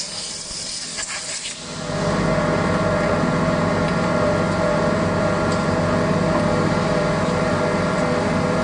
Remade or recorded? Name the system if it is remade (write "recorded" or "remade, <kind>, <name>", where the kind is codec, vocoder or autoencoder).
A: recorded